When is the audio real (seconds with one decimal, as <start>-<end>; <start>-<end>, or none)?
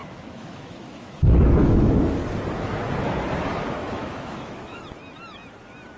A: 2.2-3.8; 4.8-6.0